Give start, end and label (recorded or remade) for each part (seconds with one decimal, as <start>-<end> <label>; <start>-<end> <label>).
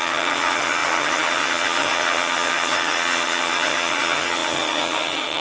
0.0-5.4 remade